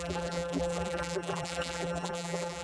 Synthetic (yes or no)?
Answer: yes